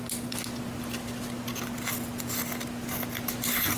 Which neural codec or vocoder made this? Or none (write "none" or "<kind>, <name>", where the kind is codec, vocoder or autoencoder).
none